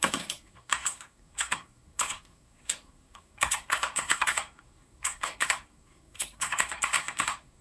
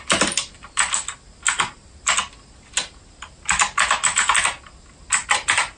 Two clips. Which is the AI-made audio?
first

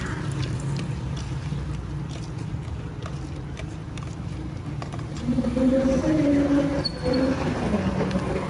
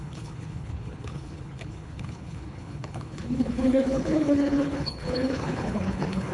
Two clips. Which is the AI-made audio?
second